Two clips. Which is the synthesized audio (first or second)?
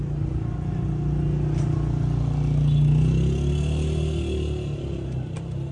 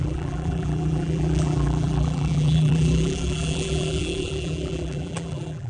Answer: second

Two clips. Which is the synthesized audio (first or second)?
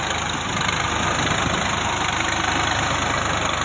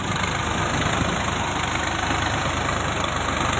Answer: second